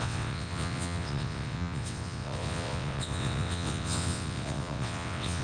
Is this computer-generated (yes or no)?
yes